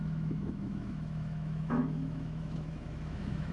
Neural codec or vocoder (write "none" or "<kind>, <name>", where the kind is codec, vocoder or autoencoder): autoencoder, DAC-VAE